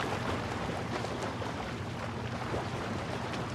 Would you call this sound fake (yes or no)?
no